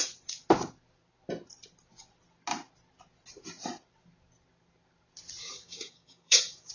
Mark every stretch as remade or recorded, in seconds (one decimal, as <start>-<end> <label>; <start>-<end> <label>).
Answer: 0.0-5.4 recorded; 5.4-6.7 remade